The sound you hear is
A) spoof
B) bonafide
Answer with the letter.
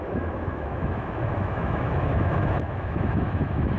A